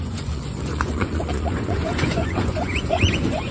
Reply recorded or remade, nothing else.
remade